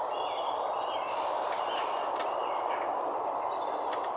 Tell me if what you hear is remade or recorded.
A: recorded